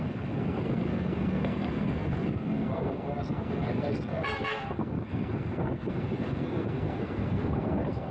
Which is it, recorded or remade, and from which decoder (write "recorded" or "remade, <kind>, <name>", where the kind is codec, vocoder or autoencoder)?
remade, codec, SNAC